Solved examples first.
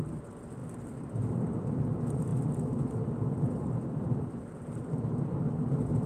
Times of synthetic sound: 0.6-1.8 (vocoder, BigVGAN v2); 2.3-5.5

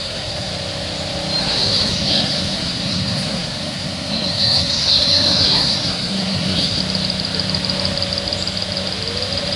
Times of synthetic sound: 0.0-0.5 (codec, SNAC); 1.4-6.8

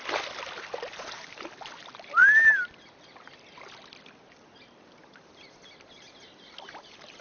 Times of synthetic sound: none

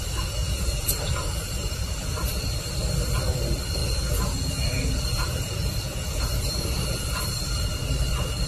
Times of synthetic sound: 0.4-2.1 (vocoder, Vocos); 3.8-7.1

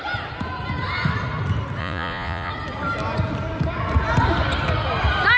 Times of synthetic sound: 1.8-2.5 (vocoder, Vocos)